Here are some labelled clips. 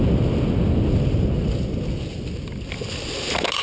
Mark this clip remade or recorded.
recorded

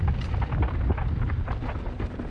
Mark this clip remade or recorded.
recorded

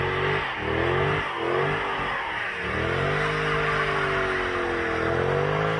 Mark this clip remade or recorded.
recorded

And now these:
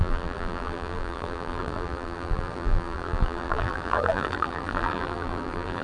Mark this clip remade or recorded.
remade